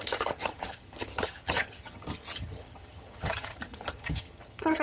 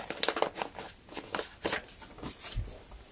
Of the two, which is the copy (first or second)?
first